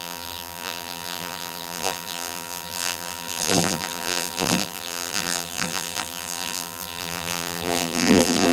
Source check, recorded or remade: remade